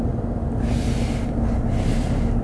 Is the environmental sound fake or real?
real